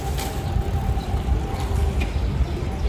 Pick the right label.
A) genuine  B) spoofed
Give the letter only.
A